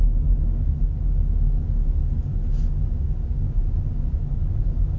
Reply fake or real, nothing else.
real